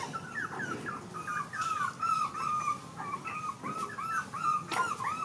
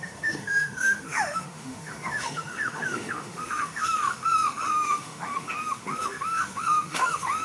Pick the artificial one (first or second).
second